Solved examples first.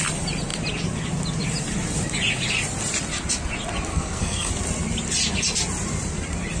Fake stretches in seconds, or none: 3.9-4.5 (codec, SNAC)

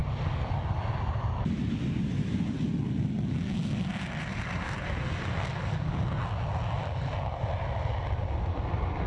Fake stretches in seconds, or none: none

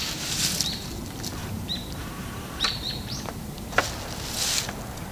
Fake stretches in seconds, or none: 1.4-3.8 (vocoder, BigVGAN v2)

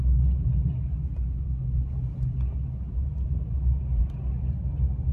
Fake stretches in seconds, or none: none

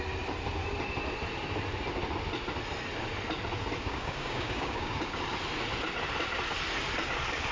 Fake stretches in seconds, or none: 3.8-5.2 (codec, DAC)